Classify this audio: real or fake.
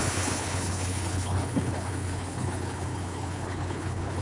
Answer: fake